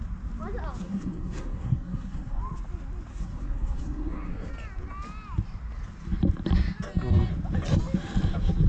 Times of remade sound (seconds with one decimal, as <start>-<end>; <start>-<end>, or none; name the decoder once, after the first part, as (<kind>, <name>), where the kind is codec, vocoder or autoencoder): 0.8-2.4 (codec, SNAC); 3.1-4.5